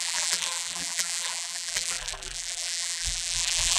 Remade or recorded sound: remade